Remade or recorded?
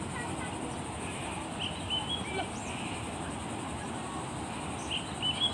recorded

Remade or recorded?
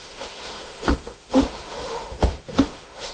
remade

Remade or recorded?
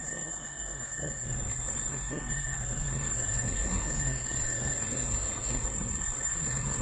remade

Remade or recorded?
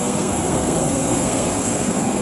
remade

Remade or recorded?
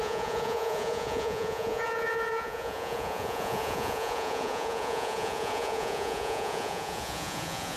remade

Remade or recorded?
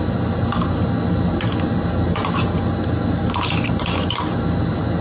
recorded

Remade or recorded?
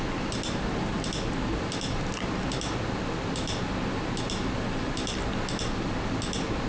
recorded